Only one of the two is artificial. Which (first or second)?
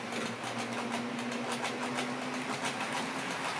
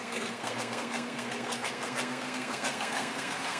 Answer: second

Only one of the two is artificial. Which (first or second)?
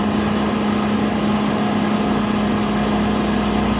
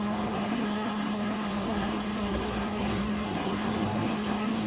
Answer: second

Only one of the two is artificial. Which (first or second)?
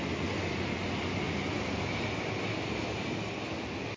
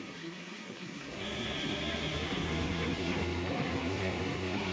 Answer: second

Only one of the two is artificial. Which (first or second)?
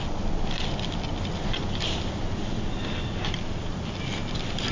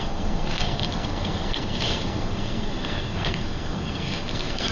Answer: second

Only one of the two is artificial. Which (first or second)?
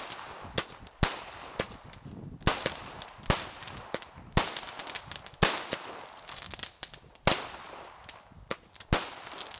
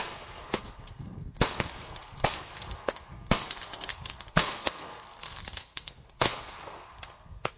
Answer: second